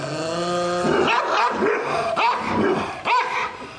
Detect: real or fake real